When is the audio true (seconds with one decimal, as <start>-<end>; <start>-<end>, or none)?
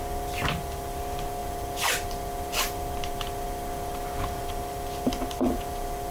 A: 0.0-6.1